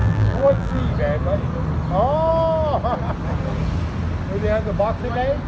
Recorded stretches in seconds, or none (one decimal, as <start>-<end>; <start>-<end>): 0.8-5.5